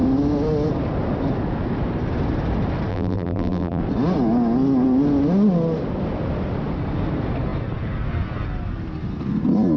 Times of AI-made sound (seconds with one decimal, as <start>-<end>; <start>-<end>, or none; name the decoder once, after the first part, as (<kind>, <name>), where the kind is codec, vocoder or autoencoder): 2.9-3.8 (vocoder, BigVGAN v2)